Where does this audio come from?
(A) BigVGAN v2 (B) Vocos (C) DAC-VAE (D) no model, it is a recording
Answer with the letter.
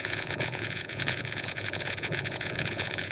B